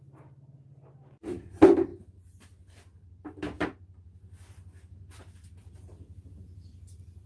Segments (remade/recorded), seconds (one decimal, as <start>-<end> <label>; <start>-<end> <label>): 0.0-7.3 recorded